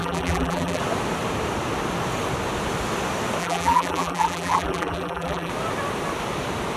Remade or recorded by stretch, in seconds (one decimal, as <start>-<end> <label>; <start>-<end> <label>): 0.0-0.8 remade; 0.8-3.4 recorded; 3.4-5.5 remade; 5.5-6.8 recorded